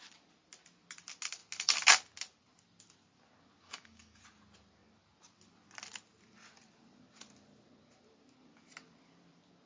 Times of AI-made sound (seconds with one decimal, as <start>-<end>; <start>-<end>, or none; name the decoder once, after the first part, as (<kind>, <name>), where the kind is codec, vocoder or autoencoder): 3.6-4.2 (codec, DAC)